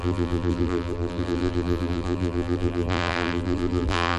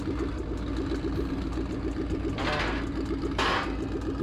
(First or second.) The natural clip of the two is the second